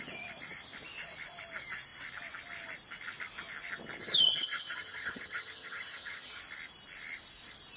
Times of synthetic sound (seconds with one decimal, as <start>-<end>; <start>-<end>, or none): 4.0-6.4